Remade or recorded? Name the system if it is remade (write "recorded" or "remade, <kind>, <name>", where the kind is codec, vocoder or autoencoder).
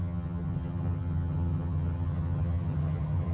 remade, vocoder, HiFi-GAN